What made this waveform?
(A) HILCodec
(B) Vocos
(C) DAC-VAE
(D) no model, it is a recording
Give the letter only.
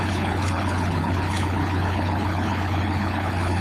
A